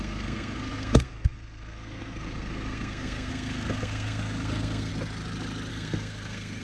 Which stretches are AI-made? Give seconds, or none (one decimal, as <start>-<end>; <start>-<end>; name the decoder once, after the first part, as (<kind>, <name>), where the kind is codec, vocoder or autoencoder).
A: 0.0-4.9 (codec, SNAC); 5.7-6.6